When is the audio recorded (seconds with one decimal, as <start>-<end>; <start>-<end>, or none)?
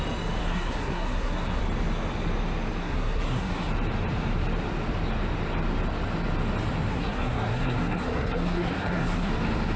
0.0-0.4; 1.6-2.8; 3.7-6.9; 9.3-9.8